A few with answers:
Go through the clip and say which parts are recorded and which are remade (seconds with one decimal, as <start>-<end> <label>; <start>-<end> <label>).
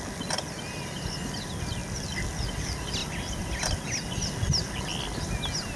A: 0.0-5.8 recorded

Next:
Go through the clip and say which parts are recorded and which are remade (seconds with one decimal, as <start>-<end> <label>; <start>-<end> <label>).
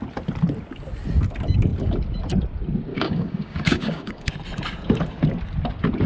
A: 0.0-2.9 recorded; 2.9-4.3 remade; 4.3-6.1 recorded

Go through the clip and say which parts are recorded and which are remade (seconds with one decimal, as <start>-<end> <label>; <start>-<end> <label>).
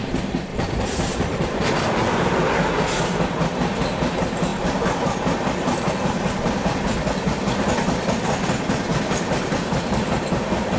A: 0.0-0.5 recorded; 0.5-2.3 remade; 2.3-8.9 recorded; 8.9-10.1 remade; 10.1-10.8 recorded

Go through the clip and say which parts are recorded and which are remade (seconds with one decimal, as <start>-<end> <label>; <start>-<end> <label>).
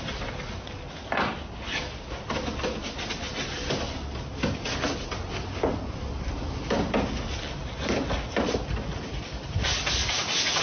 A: 0.0-10.0 recorded; 10.0-10.6 remade